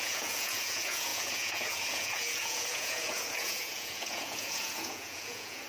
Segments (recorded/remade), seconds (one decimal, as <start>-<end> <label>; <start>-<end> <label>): 0.0-5.7 remade